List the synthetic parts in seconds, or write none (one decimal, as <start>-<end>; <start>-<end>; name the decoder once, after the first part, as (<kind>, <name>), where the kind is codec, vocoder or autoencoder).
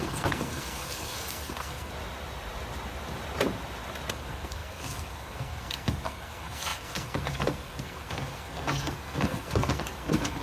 0.0-1.9 (codec, SNAC); 4.1-10.4